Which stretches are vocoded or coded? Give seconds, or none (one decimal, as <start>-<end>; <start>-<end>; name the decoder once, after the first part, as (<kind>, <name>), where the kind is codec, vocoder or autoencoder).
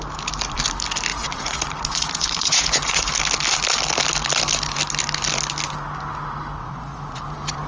1.1-3.1 (vocoder, Vocos); 6.6-7.2